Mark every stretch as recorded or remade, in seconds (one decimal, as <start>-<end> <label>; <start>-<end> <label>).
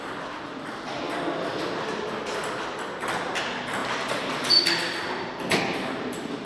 0.0-6.5 recorded